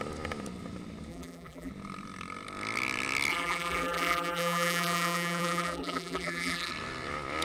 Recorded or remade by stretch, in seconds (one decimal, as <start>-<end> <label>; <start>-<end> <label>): 0.0-1.1 recorded; 1.1-1.7 remade; 1.7-3.3 recorded; 3.3-6.7 remade; 6.7-7.4 recorded

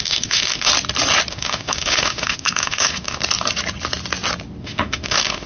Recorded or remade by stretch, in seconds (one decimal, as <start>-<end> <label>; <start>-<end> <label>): 0.0-0.7 remade; 0.7-1.3 recorded; 1.3-3.2 remade; 3.2-4.6 recorded; 4.6-5.5 remade

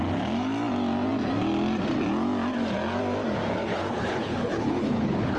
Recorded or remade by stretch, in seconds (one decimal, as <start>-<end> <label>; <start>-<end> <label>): 0.0-3.7 recorded; 3.7-5.4 remade